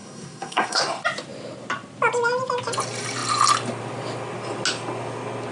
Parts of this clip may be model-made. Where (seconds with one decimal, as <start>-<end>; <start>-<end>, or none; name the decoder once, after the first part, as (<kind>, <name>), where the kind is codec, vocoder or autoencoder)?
0.0-0.8 (codec, SNAC)